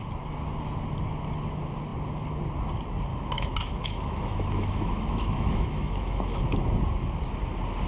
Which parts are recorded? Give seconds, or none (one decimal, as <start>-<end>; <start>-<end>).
0.0-3.1; 6.4-7.9